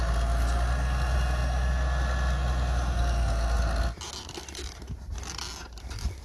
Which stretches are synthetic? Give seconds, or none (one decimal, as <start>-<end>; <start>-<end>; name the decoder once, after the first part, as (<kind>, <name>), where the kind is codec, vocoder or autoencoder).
none